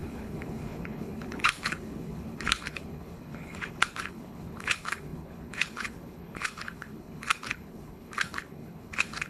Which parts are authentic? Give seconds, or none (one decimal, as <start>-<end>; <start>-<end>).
none